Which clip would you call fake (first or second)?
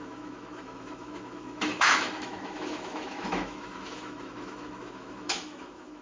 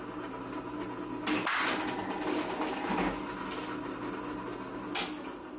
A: first